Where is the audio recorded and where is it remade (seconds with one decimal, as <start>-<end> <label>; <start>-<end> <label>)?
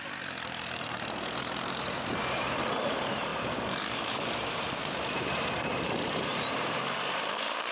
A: 0.0-7.7 remade